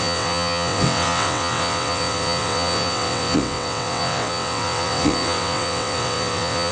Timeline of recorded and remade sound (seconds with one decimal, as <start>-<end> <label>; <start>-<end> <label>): 0.0-6.7 remade